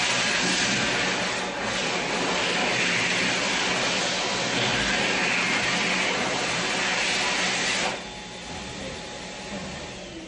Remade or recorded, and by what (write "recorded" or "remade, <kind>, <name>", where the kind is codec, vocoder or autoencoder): recorded